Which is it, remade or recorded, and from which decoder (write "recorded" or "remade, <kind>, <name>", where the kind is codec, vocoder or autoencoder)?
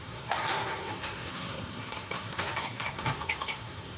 remade, codec, SNAC